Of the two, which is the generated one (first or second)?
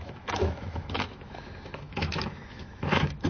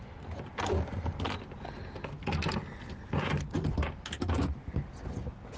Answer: first